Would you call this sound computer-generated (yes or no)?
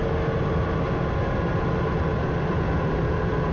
no